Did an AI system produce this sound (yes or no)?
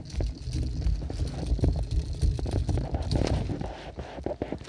no